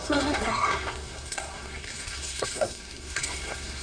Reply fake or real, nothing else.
fake